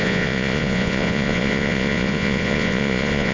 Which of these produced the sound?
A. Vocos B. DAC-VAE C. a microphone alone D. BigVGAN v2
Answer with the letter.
A